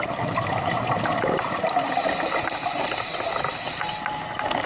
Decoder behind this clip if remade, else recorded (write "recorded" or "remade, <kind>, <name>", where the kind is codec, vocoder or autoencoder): recorded